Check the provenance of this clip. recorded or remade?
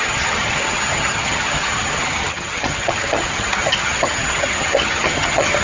remade